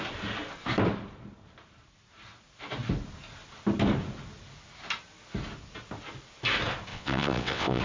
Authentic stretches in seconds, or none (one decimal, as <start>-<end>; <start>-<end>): 0.0-6.9